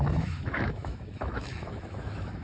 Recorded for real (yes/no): no